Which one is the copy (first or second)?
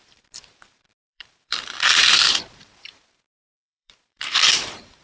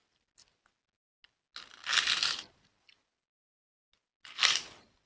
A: first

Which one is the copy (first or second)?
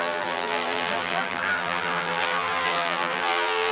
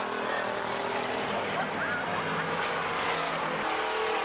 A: first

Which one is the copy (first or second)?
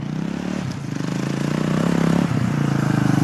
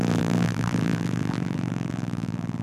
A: second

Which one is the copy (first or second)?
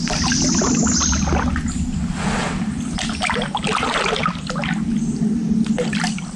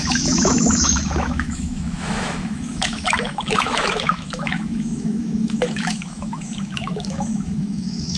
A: second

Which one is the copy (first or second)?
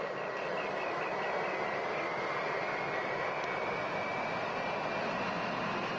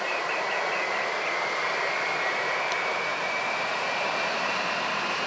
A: second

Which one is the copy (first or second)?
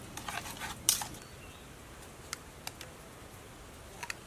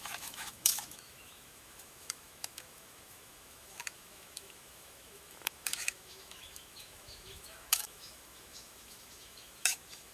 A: second